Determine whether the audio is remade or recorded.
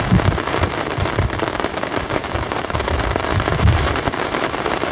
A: remade